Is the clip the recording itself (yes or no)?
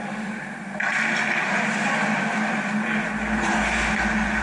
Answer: yes